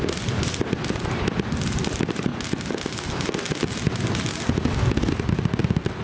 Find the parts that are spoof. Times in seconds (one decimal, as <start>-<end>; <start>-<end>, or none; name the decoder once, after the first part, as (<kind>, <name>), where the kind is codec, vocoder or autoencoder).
none

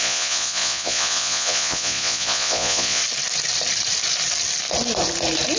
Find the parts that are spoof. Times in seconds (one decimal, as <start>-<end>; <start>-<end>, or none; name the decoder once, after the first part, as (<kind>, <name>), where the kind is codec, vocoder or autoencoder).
0.0-3.0 (vocoder, Vocos)

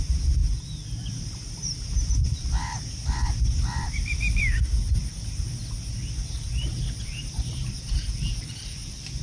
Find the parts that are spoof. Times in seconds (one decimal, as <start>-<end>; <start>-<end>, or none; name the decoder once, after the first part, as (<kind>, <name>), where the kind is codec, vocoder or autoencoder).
0.0-0.4 (vocoder, BigVGAN v2); 1.1-5.6; 6.2-9.2

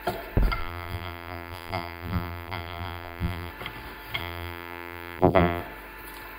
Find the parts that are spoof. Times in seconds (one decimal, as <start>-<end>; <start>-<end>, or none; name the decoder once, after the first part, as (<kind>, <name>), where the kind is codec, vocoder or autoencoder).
0.6-3.5 (vocoder, BigVGAN v2); 4.2-5.6

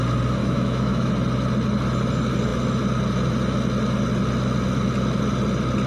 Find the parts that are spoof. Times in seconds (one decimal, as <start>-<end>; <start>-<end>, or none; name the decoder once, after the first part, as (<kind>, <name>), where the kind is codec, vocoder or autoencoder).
0.4-1.1 (autoencoder, DAC-VAE)

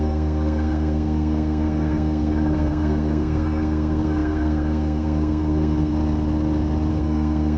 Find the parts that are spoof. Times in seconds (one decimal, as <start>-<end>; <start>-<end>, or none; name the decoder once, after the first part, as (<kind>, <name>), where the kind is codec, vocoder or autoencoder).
0.0-5.9 (codec, SNAC); 6.9-7.6

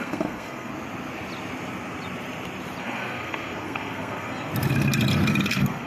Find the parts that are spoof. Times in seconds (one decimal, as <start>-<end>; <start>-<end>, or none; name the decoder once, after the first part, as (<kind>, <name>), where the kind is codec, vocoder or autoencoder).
0.0-0.7 (codec, SNAC); 2.8-4.5; 5.3-5.9